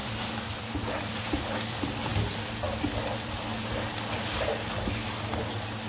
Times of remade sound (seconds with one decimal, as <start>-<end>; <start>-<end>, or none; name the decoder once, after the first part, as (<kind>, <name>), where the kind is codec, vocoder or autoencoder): 0.0-2.1 (vocoder, BigVGAN v2); 2.7-3.7

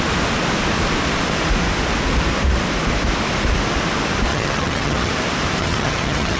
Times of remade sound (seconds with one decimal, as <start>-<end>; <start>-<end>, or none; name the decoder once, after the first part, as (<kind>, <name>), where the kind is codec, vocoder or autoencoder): 4.3-5.1 (vocoder, HiFi-GAN); 5.6-6.4

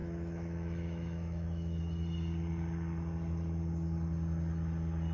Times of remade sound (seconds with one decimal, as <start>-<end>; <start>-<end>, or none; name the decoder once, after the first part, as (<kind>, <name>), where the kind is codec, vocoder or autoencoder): 0.0-1.8 (autoencoder, DAC-VAE)

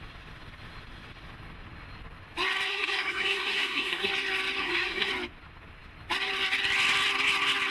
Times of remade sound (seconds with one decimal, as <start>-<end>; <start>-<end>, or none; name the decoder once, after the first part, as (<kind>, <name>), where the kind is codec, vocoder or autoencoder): 2.7-4.1 (codec, SNAC); 4.6-5.1